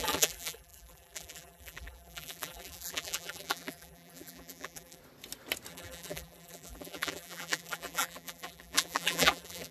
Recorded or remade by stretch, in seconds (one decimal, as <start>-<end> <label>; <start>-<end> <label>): 0.0-5.0 remade; 5.0-5.7 recorded; 5.7-9.7 remade